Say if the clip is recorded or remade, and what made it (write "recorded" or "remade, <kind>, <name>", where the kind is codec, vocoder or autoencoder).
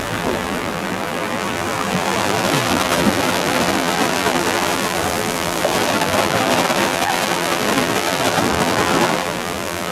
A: remade, vocoder, BigVGAN v2